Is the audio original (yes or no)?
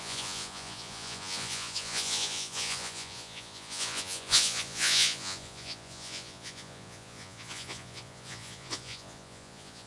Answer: no